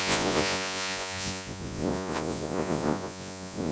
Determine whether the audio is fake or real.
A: fake